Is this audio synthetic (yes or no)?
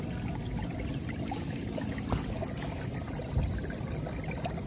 no